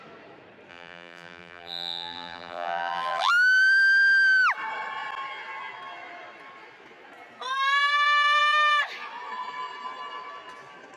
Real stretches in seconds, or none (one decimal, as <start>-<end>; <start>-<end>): 0.0-0.7; 3.3-11.0